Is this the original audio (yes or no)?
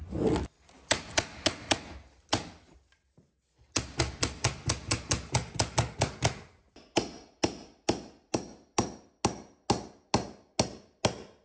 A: yes